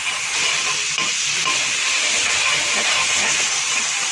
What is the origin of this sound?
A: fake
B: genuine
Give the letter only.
B